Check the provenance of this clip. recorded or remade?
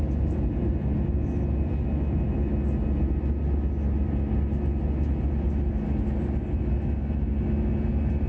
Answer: recorded